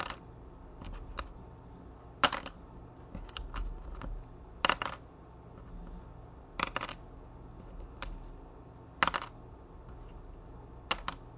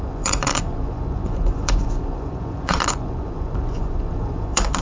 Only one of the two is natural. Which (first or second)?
first